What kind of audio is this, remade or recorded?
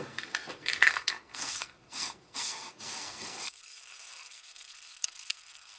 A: remade